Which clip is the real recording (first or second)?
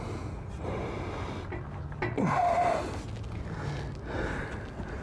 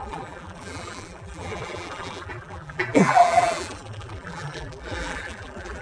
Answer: first